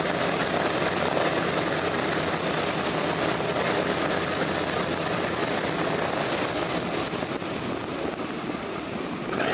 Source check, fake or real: real